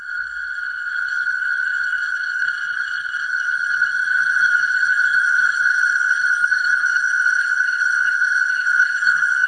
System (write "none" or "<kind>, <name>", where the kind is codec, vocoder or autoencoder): codec, SNAC